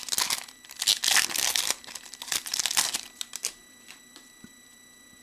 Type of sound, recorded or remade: recorded